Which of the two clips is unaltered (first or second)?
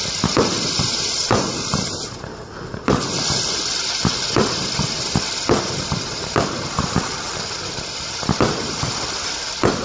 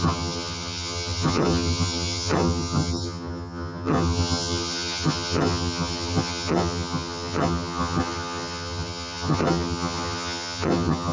first